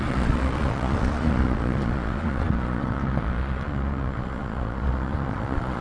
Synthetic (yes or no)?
yes